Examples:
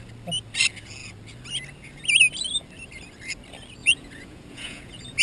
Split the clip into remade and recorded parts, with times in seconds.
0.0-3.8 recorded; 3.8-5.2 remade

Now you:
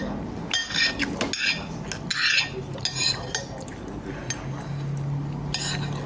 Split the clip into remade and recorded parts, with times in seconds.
0.0-6.1 recorded